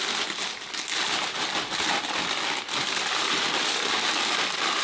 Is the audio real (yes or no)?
yes